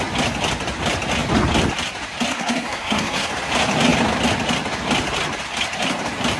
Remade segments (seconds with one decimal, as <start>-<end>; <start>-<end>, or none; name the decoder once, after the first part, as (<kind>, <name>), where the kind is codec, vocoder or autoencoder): 2.3-3.3 (codec, SNAC)